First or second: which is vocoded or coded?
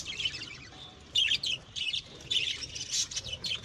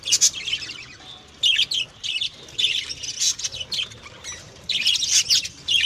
first